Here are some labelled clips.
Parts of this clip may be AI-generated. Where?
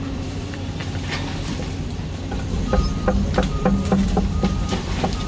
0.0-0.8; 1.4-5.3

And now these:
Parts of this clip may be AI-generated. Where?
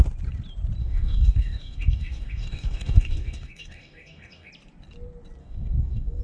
0.8-4.5; 5.4-6.2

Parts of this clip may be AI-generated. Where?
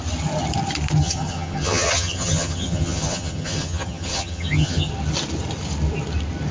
1.0-4.9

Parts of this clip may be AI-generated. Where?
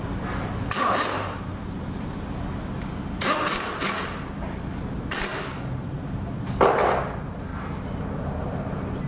5.3-6.4; 7.5-9.1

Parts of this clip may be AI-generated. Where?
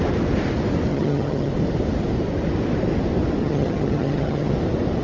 0.9-1.5; 3.4-4.5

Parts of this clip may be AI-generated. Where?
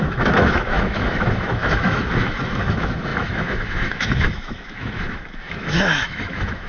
0.0-6.7